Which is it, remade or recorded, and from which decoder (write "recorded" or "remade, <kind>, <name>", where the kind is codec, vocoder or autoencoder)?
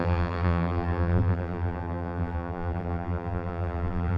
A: remade, vocoder, BigVGAN v2